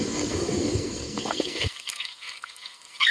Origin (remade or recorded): remade